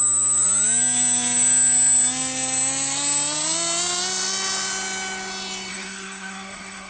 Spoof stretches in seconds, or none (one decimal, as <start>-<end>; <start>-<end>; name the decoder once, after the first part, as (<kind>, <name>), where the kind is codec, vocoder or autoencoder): 5.7-6.9 (codec, SNAC)